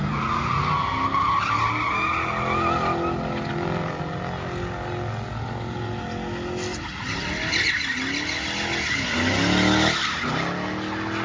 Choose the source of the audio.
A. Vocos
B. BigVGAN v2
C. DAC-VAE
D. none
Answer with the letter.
D